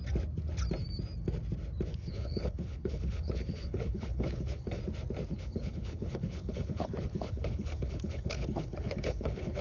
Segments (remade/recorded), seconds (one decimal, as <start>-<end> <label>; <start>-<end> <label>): 0.0-1.9 recorded; 1.9-4.8 remade; 4.8-5.3 recorded; 5.3-9.6 remade